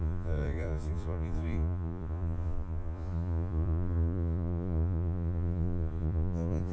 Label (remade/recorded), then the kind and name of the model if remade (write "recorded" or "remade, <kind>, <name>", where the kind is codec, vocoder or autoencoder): remade, vocoder, Vocos